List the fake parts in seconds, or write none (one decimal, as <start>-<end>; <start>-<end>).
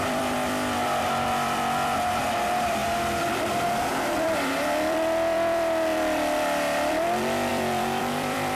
0.0-8.6